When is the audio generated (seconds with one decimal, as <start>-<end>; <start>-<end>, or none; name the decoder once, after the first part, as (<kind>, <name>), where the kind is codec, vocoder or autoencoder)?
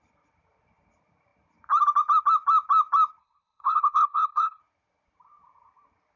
3.2-4.6 (codec, HILCodec)